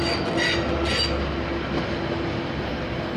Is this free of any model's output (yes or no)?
yes